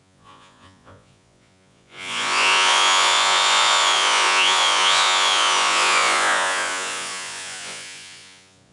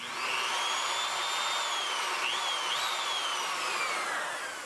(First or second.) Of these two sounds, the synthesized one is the first